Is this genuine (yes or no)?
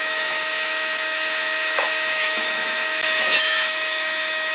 no